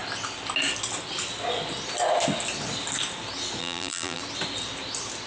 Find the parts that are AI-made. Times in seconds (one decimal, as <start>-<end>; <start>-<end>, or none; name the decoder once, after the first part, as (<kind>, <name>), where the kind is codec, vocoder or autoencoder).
3.6-4.2 (vocoder, BigVGAN v2)

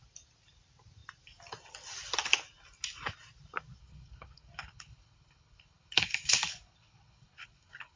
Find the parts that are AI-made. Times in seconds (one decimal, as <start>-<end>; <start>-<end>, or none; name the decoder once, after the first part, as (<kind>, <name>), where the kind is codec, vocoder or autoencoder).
3.8-8.0 (codec, HILCodec)

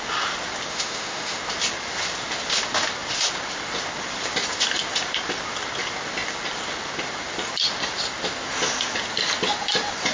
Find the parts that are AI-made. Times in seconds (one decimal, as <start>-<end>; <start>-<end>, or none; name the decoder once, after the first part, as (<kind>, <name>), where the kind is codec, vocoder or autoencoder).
0.7-1.4 (autoencoder, DAC-VAE)

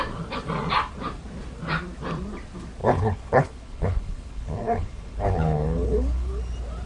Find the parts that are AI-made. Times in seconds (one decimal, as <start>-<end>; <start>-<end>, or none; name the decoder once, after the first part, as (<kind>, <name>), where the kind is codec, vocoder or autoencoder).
2.8-6.4 (codec, HILCodec)

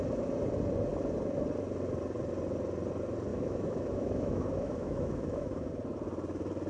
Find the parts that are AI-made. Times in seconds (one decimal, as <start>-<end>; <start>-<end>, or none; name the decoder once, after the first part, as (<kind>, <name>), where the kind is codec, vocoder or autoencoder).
3.3-5.7 (autoencoder, DAC-VAE)

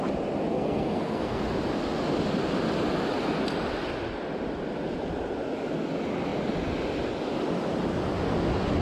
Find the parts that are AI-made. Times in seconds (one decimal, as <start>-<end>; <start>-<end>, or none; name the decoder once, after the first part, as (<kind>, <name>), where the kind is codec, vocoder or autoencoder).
0.5-1.4 (codec, SNAC)

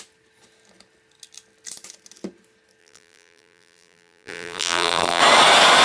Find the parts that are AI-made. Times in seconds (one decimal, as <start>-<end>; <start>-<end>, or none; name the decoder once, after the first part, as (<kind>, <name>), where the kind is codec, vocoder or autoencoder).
2.8-5.2 (vocoder, BigVGAN v2)

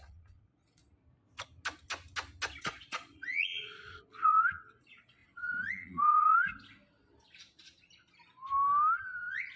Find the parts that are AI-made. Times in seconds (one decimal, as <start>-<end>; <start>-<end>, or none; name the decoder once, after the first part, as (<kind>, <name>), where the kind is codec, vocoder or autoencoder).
0.0-0.8 (vocoder, Vocos); 2.6-6.5; 9.0-9.6